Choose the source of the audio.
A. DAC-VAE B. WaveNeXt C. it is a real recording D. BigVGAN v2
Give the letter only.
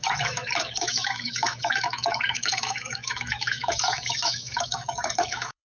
A